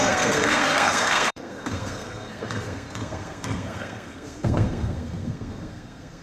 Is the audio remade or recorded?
remade